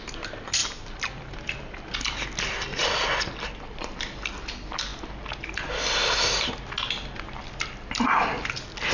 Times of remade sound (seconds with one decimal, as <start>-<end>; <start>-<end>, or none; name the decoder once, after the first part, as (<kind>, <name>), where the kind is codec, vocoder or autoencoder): 0.6-3.2 (vocoder, BigVGAN v2)